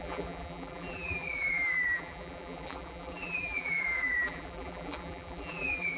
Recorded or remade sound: remade